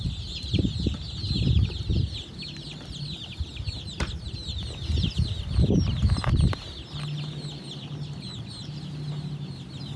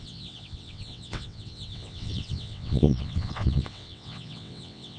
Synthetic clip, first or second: second